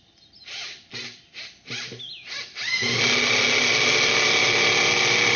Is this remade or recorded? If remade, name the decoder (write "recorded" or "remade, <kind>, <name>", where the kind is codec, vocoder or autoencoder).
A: recorded